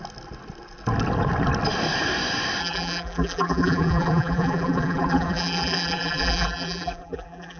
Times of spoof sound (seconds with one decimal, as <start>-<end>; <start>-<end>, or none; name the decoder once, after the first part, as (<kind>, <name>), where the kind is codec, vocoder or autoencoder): 2.6-7.6 (vocoder, BigVGAN v2)